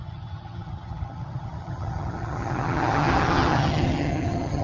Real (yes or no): no